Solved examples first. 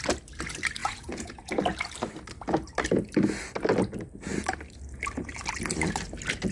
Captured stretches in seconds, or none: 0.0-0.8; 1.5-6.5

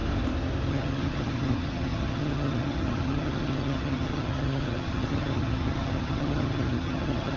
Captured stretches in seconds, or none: 0.0-0.7

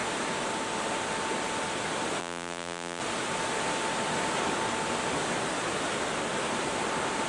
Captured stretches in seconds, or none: 0.0-2.2; 3.0-7.3

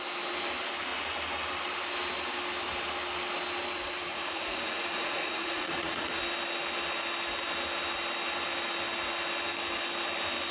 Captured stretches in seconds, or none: 0.0-4.1; 6.2-10.5

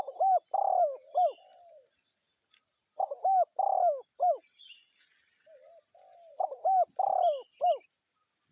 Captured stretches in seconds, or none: 0.0-8.5

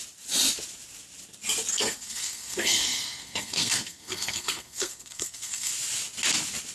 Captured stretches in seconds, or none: 0.0-1.7; 5.7-6.7

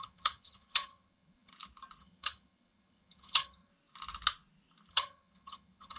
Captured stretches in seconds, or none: 1.5-2.0; 3.7-4.9